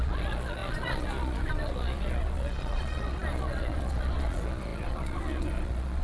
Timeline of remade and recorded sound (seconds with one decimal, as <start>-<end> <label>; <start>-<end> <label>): 0.0-6.0 remade

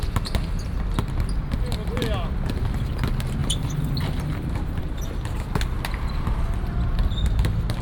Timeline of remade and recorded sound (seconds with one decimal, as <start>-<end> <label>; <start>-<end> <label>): 0.0-3.4 recorded; 3.4-4.8 remade; 4.8-7.8 recorded